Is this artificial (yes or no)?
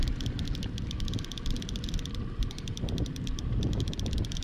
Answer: no